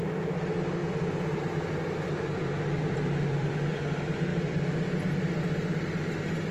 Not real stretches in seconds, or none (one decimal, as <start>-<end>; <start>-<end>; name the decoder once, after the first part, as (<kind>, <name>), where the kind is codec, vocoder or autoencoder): 0.8-1.7 (vocoder, BigVGAN v2); 2.4-3.8; 4.3-5.4